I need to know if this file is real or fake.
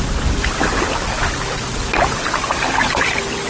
real